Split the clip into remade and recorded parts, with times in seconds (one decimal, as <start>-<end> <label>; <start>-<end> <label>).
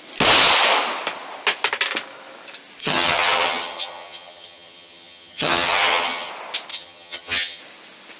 0.0-2.8 recorded; 2.8-6.3 remade; 6.3-6.7 recorded; 6.7-7.6 remade; 7.6-8.2 recorded